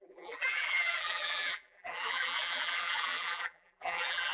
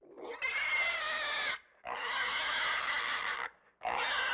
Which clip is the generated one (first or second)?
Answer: first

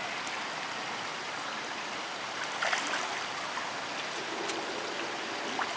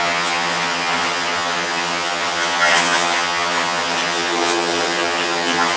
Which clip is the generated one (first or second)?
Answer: second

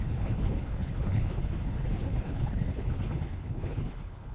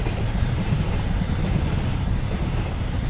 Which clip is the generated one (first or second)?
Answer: first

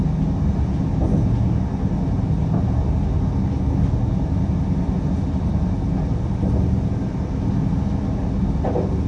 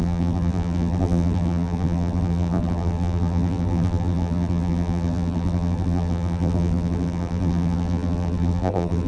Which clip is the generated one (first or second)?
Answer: second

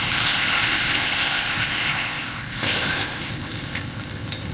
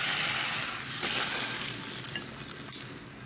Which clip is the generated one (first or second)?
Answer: first